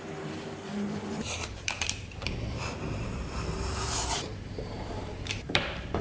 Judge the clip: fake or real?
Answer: fake